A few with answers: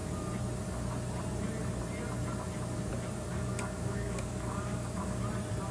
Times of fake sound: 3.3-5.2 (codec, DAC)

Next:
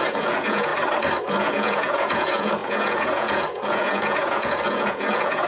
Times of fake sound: 0.0-0.7 (vocoder, Vocos); 1.2-5.5

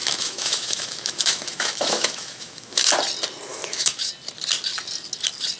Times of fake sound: 0.0-2.9 (autoencoder, DAC-VAE); 3.5-4.1

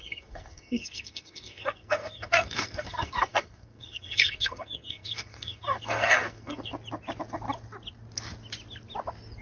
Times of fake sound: 0.0-6.7 (codec, SNAC)

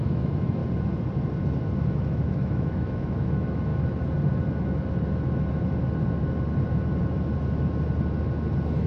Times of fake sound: 0.0-0.6 (autoencoder, DAC-VAE); 1.9-3.7